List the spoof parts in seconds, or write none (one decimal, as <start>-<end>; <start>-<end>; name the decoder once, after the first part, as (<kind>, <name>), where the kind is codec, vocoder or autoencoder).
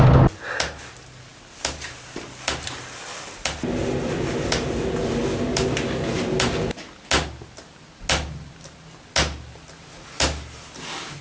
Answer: none